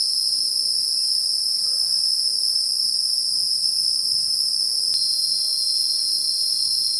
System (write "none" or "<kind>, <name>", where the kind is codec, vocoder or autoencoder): none